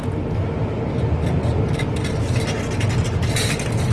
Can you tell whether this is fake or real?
real